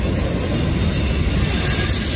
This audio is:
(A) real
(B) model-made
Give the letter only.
A